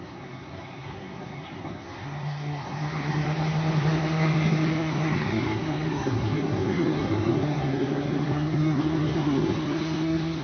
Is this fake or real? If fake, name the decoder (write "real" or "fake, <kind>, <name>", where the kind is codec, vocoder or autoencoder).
fake, codec, SNAC